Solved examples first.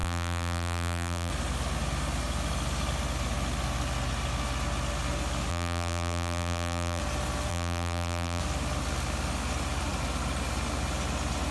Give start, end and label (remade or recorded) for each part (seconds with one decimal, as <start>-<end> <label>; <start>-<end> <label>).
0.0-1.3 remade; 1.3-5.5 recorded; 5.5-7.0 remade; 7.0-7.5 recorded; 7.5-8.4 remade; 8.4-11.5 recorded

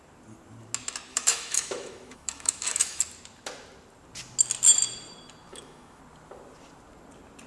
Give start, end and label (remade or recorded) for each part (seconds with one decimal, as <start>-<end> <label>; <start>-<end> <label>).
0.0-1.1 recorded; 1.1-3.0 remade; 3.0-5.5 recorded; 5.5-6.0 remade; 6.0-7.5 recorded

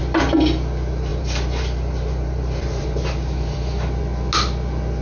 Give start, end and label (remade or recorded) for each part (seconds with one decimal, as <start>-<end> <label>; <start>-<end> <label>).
0.0-1.1 recorded; 1.1-4.0 remade; 4.0-5.0 recorded